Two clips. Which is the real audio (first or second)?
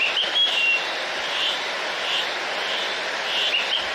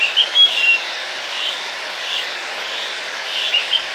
first